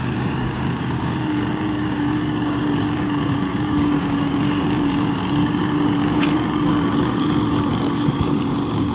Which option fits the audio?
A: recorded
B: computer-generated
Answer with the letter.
B